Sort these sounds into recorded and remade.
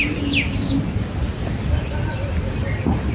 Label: recorded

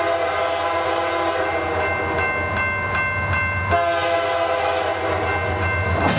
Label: recorded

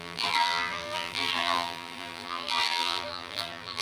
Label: remade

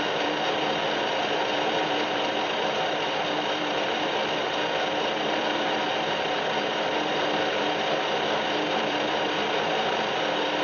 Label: remade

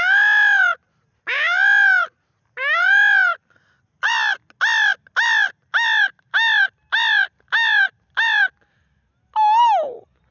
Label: recorded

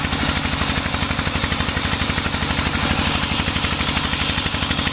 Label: recorded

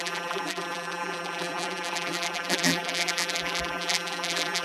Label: remade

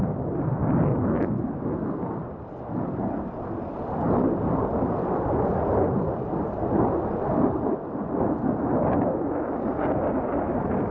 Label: remade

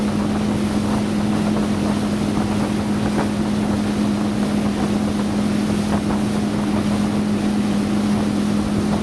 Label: recorded